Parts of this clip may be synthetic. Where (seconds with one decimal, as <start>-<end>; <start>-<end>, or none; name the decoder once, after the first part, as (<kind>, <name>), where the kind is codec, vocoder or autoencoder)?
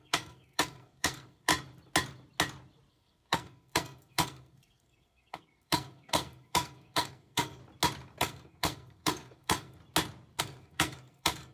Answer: 0.0-1.5 (codec, SNAC); 2.9-7.6; 8.2-9.8; 10.4-11.5